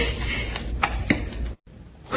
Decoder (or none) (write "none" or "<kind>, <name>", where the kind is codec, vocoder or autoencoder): none